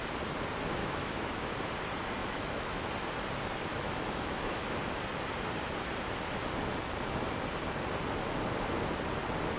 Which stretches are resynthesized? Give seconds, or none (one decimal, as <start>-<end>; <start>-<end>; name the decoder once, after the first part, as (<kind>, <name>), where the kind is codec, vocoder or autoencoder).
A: 0.8-1.5 (autoencoder, DAC-VAE); 2.2-2.9; 3.7-4.8